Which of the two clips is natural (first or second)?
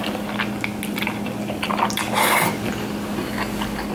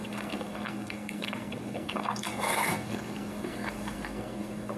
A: first